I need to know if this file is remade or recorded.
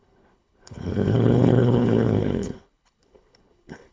remade